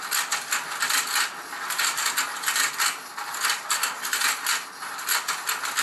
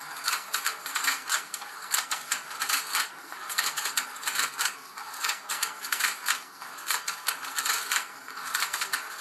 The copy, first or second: second